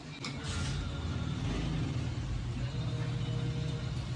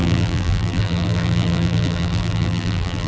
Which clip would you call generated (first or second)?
second